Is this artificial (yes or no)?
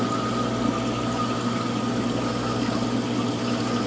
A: no